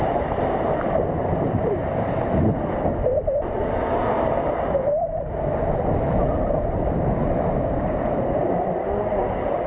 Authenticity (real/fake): real